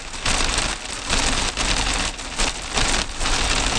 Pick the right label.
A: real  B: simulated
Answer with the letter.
A